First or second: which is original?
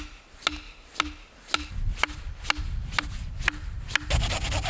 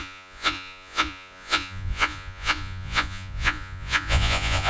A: first